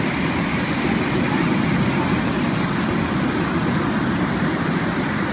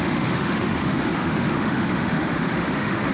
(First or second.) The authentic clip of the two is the first